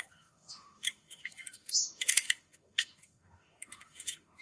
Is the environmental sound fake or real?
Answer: fake